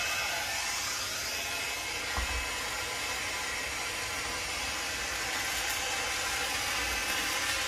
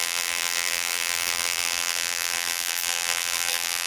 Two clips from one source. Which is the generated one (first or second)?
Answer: second